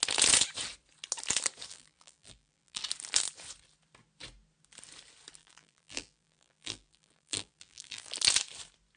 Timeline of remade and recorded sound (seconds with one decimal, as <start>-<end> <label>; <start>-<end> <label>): 0.0-1.7 recorded; 1.7-2.8 remade; 2.8-5.4 recorded; 5.4-8.1 remade; 8.1-9.0 recorded